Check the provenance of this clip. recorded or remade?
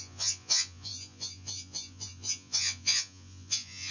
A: remade